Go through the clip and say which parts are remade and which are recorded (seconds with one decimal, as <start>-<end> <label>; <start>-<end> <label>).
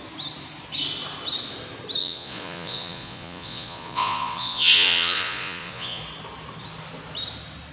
0.0-2.0 recorded; 2.0-6.0 remade; 6.0-7.7 recorded